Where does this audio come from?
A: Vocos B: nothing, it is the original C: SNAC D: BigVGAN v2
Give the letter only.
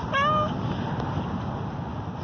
B